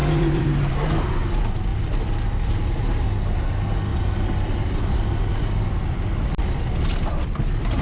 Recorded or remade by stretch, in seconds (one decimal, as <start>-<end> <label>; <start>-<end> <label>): 0.0-0.7 remade; 0.7-1.7 recorded; 1.7-2.7 remade; 2.7-3.9 recorded; 3.9-4.8 remade; 4.8-7.8 recorded